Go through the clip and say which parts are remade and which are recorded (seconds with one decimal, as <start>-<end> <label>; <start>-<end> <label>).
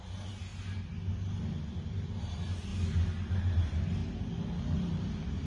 0.0-0.5 remade; 0.5-2.2 recorded; 2.2-2.7 remade; 2.7-3.3 recorded; 3.3-4.0 remade; 4.0-4.6 recorded; 4.6-5.5 remade